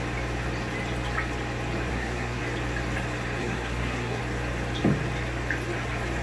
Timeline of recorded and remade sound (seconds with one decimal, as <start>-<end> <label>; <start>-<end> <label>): 0.0-1.9 recorded; 1.9-2.4 remade; 2.4-3.4 recorded; 3.4-4.2 remade; 4.2-6.2 recorded